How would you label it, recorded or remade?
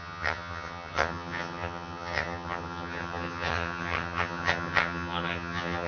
remade